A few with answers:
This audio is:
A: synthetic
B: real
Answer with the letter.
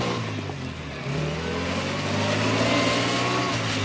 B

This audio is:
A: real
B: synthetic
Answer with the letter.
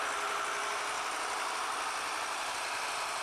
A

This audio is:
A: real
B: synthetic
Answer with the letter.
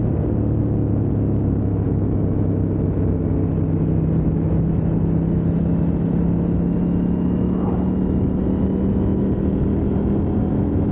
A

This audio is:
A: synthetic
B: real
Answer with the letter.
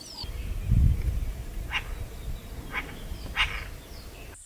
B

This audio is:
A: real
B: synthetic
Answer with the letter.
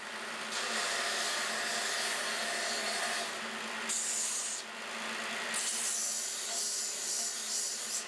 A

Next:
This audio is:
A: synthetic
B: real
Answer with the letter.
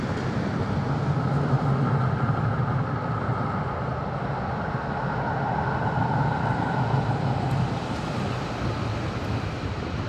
B